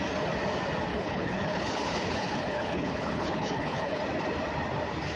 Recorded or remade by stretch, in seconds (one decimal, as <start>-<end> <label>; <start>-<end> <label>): 0.0-0.9 recorded; 0.9-4.0 remade; 4.0-5.2 recorded